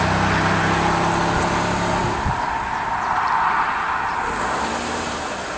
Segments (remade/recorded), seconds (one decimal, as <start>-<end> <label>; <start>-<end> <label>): 0.0-5.6 recorded